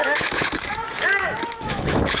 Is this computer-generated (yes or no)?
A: yes